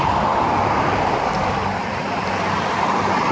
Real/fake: real